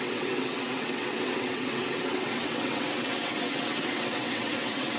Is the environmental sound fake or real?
fake